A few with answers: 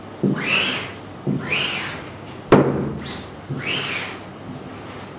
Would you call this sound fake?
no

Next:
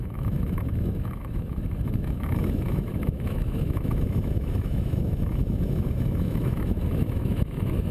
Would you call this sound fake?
yes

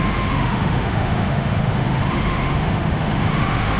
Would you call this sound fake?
yes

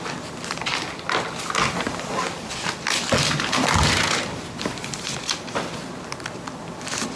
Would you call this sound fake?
no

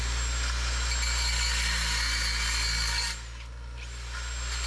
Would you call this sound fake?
no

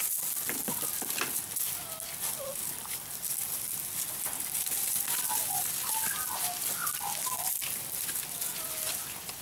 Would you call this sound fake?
no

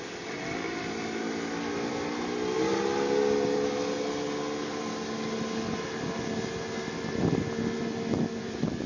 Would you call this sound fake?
no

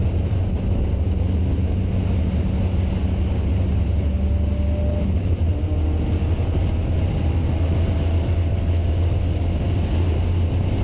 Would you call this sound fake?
no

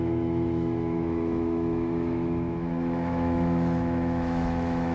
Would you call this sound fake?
yes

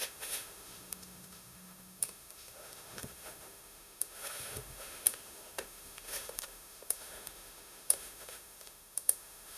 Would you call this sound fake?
yes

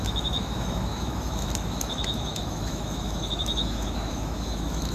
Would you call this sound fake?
yes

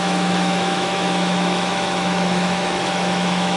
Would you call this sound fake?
yes